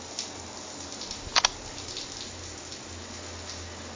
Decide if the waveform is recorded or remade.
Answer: recorded